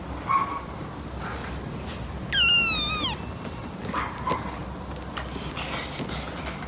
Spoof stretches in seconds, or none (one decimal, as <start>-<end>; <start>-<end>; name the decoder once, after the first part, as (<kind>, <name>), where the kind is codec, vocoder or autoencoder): none